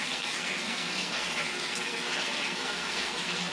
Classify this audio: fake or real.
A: fake